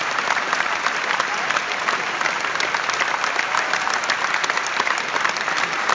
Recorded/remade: recorded